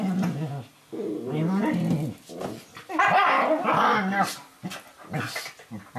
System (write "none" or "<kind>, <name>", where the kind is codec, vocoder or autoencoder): none